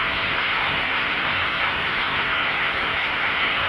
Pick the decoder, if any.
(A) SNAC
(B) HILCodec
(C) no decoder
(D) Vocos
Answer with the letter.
A